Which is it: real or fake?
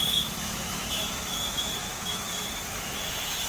fake